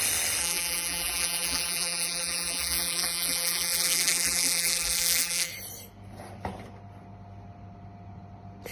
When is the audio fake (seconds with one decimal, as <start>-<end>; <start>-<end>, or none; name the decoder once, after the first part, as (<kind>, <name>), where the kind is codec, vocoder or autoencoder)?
0.4-5.5 (vocoder, BigVGAN v2)